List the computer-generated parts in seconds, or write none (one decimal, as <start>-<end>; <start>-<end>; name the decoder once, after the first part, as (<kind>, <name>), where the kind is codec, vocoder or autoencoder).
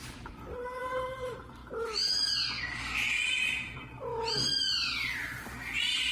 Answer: 0.0-1.6 (vocoder, BigVGAN v2); 2.6-6.1